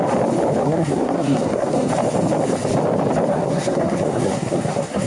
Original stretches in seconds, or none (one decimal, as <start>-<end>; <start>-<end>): 0.0-0.6; 1.9-3.3